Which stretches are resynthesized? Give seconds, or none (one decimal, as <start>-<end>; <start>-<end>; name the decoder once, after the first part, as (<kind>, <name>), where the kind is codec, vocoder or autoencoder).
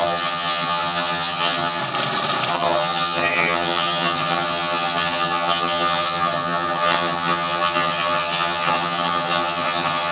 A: 0.0-1.8 (vocoder, HiFi-GAN); 2.5-10.1